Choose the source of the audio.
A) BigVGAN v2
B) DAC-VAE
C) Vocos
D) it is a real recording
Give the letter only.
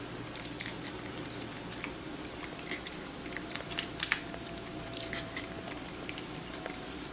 A